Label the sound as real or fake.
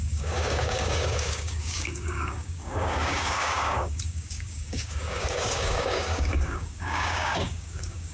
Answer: fake